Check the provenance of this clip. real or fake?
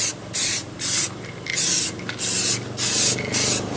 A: real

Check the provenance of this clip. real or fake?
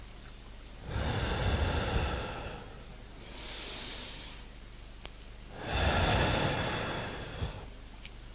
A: real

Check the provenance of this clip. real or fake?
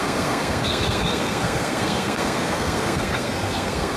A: fake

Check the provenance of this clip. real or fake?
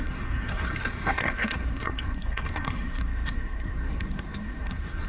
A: fake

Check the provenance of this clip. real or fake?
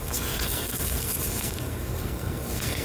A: fake